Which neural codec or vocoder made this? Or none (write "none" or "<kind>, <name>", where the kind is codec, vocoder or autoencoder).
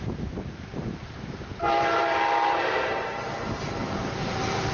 vocoder, BigVGAN v2